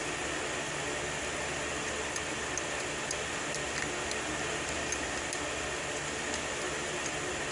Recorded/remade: recorded